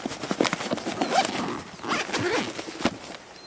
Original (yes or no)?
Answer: yes